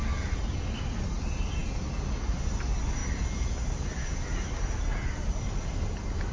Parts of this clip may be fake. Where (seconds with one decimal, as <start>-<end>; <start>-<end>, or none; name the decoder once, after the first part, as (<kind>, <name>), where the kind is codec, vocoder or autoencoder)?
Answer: none

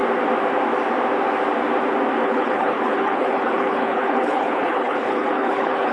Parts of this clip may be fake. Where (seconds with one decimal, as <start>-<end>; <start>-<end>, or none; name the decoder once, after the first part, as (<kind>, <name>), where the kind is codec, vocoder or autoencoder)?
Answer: 2.2-5.9 (codec, HILCodec)

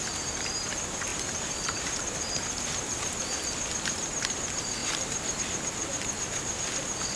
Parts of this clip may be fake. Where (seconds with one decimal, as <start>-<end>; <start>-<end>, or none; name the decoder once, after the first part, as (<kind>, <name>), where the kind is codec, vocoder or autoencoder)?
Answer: 0.0-0.7 (vocoder, BigVGAN v2); 4.8-5.4

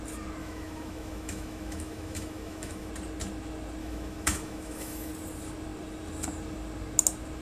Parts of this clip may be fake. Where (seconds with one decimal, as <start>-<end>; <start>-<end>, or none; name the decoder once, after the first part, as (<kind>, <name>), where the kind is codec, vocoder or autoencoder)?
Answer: 0.4-2.9 (autoencoder, DAC-VAE); 3.8-5.1

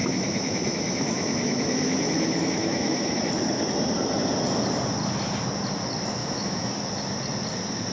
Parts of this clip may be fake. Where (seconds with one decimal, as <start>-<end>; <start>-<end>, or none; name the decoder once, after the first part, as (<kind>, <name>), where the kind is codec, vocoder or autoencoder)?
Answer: 0.0-3.2 (autoencoder, DAC-VAE); 6.2-6.7

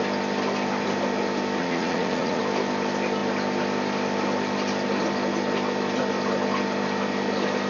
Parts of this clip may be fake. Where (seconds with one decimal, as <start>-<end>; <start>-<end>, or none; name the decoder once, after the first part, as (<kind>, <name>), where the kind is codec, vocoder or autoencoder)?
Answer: 1.6-2.4 (vocoder, Vocos)